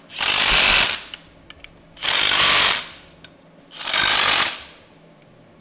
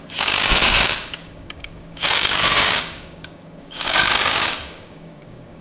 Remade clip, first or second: second